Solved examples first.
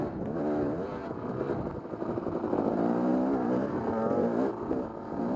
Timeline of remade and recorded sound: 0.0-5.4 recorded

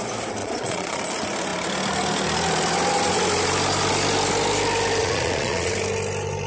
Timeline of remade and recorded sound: 0.0-0.4 recorded; 0.4-1.0 remade; 1.0-5.0 recorded; 5.0-5.7 remade; 5.7-6.5 recorded

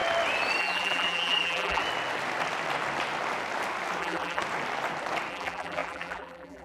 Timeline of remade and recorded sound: 0.0-0.6 recorded; 0.6-1.8 remade; 1.8-4.0 recorded; 4.0-4.4 remade; 4.4-5.3 recorded; 5.3-6.6 remade